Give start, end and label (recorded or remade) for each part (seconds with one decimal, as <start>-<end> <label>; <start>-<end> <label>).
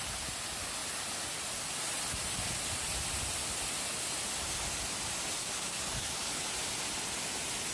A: 0.0-5.4 recorded; 5.4-6.4 remade; 6.4-7.7 recorded